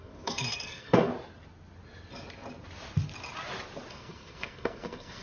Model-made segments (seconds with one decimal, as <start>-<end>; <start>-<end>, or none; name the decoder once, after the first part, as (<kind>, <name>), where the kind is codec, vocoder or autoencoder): 0.0-1.1 (codec, SNAC); 3.9-5.2